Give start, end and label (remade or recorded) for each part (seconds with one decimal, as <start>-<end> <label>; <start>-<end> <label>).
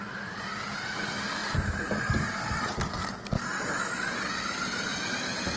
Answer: 0.0-5.6 recorded